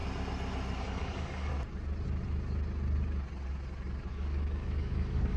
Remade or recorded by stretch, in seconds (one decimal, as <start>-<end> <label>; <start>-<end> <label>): 0.0-0.8 recorded; 0.8-1.5 remade; 1.5-4.1 recorded; 4.1-5.4 remade